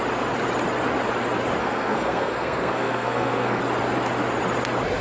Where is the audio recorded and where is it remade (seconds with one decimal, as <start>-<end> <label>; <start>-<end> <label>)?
0.0-1.6 recorded; 1.6-3.6 remade; 3.6-5.0 recorded